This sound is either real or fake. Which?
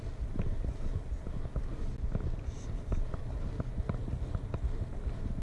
real